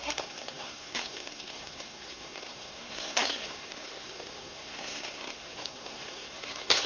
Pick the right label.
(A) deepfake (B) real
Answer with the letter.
A